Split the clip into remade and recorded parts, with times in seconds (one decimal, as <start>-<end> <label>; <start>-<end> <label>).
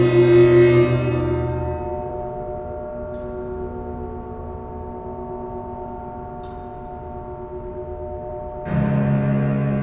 0.0-9.8 recorded